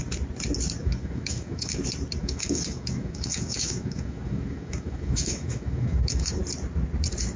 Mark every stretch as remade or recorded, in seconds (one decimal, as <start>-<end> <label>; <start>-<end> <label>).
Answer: 0.0-0.8 recorded; 0.8-1.8 remade; 1.8-2.2 recorded; 2.2-6.4 remade; 6.4-7.4 recorded